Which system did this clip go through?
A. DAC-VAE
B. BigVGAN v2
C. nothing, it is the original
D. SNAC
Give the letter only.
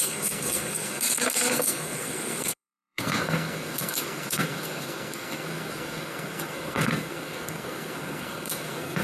D